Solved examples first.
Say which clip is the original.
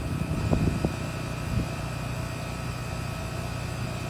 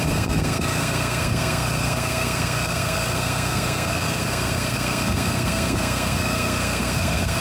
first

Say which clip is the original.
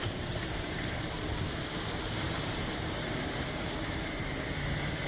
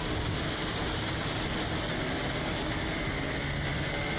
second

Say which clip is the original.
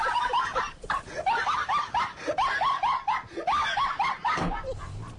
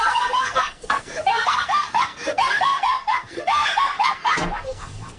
first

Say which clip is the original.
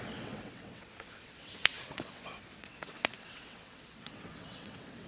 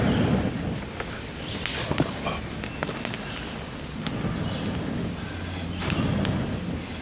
second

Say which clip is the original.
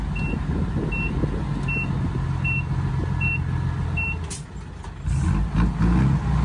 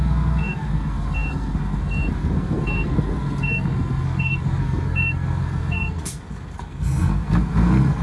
first